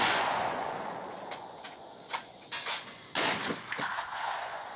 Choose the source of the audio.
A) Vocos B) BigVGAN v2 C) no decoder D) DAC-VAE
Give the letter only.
A